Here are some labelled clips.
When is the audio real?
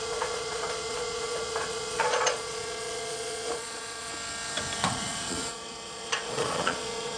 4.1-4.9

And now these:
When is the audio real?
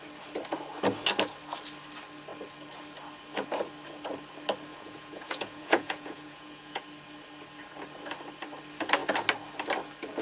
0.0-4.7; 6.8-10.2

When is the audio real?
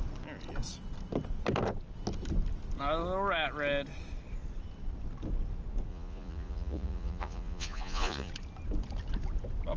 0.0-5.9; 8.3-9.8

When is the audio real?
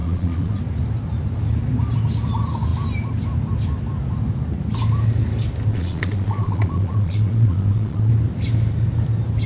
0.6-5.7; 8.1-9.5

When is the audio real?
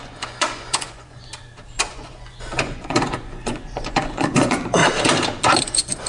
1.3-1.9; 4.8-5.6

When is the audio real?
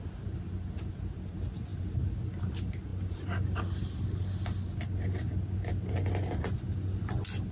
0.0-7.5